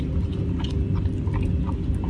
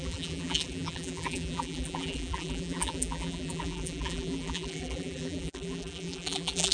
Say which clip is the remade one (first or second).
second